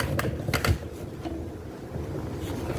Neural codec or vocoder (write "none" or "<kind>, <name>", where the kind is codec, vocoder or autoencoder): none